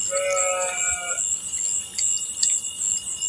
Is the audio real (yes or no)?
yes